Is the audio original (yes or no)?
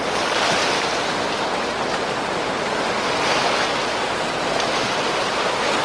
yes